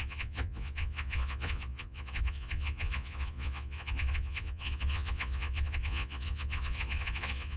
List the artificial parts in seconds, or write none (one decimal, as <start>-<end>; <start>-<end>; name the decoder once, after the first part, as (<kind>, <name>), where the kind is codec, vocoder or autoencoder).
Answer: 0.0-7.6 (vocoder, Vocos)